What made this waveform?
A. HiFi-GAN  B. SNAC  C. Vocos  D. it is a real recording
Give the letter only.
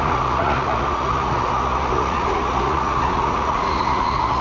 C